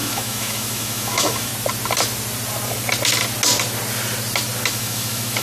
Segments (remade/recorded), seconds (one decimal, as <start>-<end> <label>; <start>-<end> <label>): 0.0-1.5 remade; 1.5-4.7 recorded; 4.7-5.4 remade